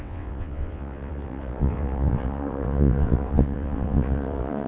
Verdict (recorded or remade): remade